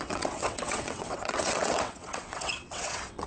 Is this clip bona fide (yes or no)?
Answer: no